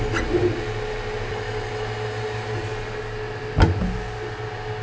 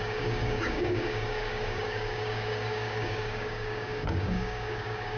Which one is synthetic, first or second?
second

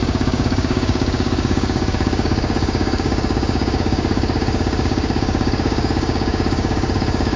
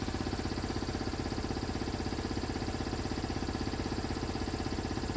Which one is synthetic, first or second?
first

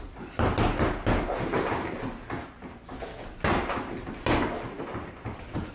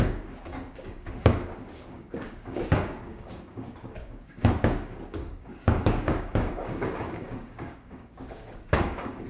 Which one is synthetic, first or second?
second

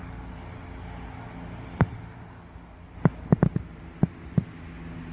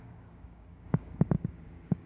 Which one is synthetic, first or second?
second